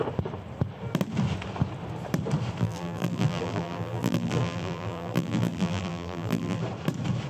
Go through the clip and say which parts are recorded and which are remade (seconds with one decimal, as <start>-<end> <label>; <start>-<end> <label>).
0.0-2.6 recorded; 2.6-6.6 remade; 6.6-7.3 recorded